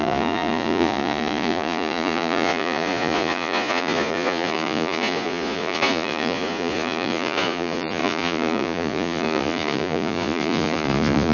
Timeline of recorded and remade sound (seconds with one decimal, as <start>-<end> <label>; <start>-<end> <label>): 0.0-11.3 remade